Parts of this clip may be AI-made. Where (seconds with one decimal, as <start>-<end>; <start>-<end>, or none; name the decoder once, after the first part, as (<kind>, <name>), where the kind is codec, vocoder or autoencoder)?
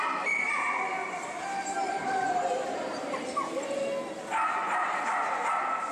none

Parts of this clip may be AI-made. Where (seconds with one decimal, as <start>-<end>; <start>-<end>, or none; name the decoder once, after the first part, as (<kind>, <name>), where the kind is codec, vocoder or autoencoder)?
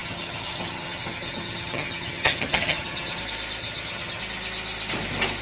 0.0-3.2 (vocoder, HiFi-GAN); 3.6-4.2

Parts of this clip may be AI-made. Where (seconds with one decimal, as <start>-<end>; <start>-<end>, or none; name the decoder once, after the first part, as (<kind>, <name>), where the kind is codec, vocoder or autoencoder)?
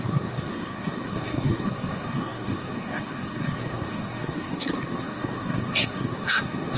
0.0-6.8 (codec, SNAC)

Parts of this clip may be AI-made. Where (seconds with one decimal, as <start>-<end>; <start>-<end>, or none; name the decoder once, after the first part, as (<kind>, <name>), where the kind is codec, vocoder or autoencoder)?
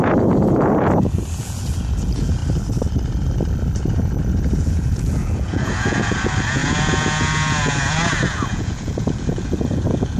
0.0-2.4 (vocoder, Vocos); 3.8-10.2